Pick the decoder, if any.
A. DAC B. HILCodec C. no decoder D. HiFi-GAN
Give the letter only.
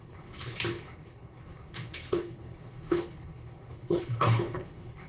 B